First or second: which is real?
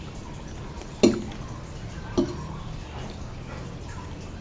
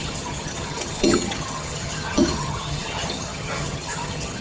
first